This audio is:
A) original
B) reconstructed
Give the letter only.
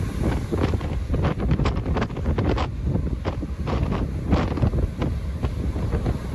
A